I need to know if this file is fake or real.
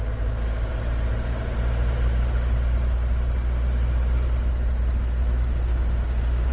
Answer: real